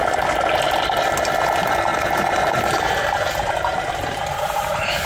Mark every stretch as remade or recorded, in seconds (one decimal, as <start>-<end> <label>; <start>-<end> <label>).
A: 0.0-1.9 recorded; 1.9-5.1 remade